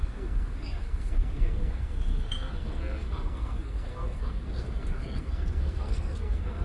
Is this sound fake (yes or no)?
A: yes